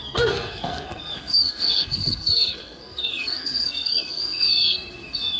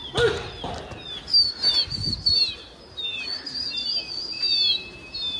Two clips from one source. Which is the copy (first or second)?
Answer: first